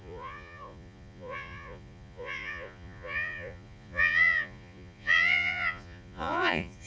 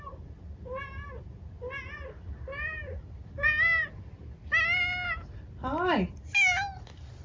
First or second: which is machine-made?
first